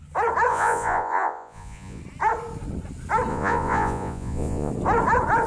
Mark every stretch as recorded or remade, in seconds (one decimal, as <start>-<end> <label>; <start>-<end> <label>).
0.0-0.5 recorded; 0.5-2.0 remade; 2.0-3.3 recorded; 3.3-4.7 remade; 4.7-5.5 recorded